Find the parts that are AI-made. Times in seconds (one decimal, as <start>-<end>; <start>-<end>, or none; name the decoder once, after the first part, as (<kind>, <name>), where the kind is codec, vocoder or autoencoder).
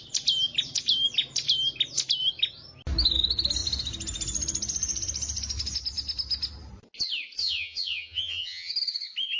7.4-8.7 (vocoder, HiFi-GAN)